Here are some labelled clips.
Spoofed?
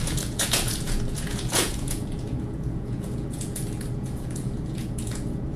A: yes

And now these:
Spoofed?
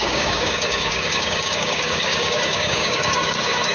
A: yes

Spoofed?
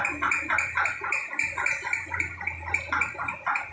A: no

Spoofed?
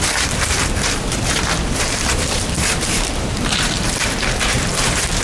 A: yes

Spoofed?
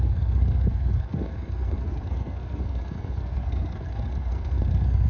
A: yes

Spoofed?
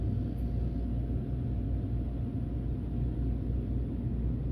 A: no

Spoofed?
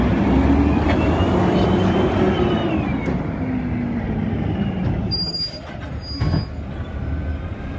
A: no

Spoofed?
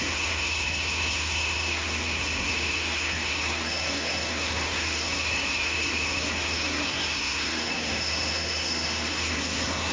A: yes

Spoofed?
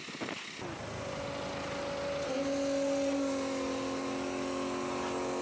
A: no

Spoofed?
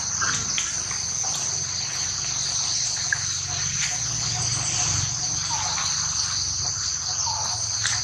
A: no